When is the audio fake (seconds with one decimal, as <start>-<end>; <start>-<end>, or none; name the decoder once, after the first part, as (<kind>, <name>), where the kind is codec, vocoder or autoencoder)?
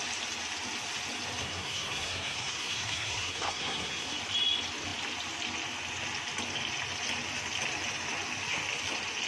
1.4-4.2 (codec, SNAC)